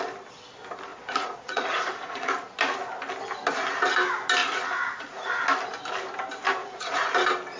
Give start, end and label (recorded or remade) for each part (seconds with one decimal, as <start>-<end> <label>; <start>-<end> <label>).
0.0-0.9 recorded; 0.9-2.3 remade; 2.3-4.4 recorded; 4.4-5.3 remade; 5.3-6.6 recorded; 6.6-7.1 remade; 7.1-7.6 recorded